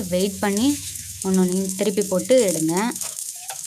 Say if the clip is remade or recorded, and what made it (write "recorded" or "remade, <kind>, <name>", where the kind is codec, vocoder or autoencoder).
remade, autoencoder, DAC-VAE